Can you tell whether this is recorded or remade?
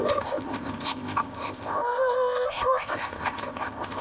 remade